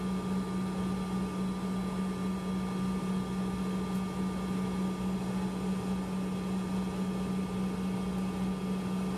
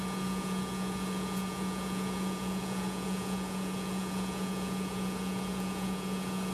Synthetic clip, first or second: second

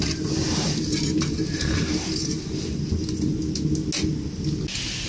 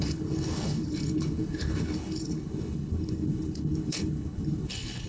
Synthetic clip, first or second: second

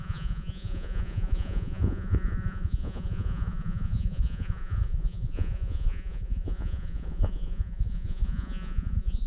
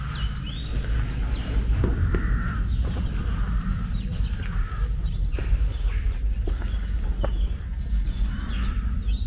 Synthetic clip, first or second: first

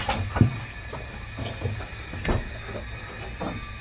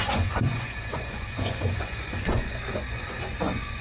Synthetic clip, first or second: second